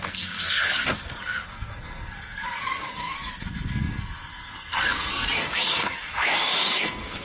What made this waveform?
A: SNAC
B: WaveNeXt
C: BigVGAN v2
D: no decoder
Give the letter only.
A